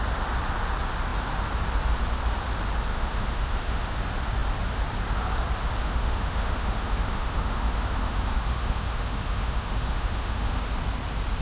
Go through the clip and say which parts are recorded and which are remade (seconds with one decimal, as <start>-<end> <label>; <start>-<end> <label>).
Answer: 0.0-2.9 recorded; 2.9-3.9 remade; 3.9-5.8 recorded; 5.8-10.6 remade; 10.6-11.4 recorded